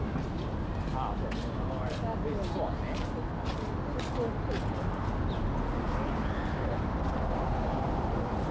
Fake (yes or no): no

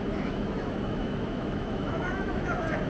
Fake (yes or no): yes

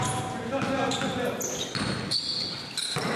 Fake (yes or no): no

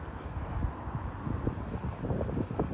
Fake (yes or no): no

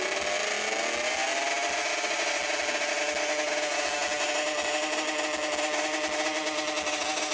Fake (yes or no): no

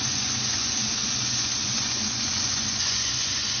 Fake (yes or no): yes